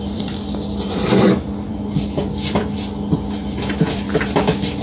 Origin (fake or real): fake